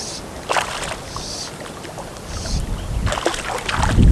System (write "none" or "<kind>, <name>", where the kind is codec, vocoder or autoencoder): none